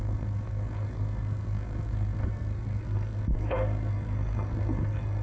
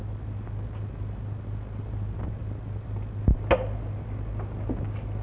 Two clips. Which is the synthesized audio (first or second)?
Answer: first